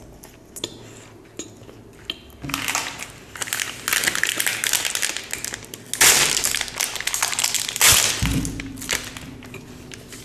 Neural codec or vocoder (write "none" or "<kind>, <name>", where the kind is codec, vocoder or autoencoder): none